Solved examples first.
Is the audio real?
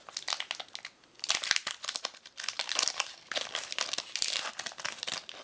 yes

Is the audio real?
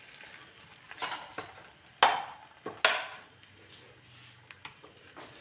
yes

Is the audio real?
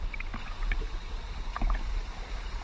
no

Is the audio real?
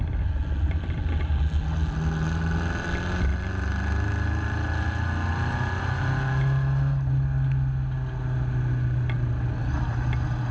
yes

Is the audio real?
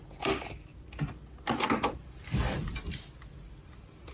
yes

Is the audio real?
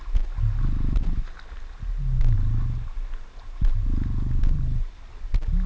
yes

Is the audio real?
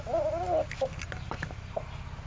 yes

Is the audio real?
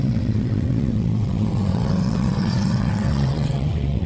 no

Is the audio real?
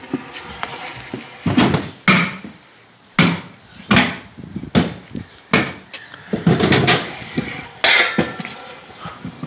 yes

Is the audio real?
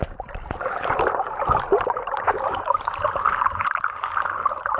yes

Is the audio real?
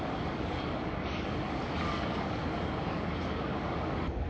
no